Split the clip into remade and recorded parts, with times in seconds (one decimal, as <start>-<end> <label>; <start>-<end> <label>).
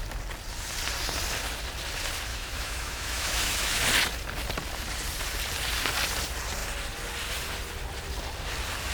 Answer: 0.0-2.3 recorded; 2.3-3.8 remade; 3.8-8.9 recorded